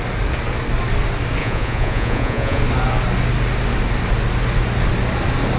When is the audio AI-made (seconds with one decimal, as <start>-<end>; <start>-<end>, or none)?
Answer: 1.4-2.6